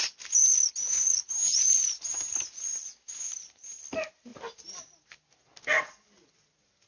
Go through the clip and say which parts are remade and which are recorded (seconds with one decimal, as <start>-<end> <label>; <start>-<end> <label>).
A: 0.0-6.9 recorded